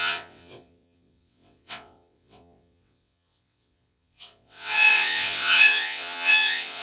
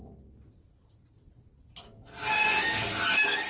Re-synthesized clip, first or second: first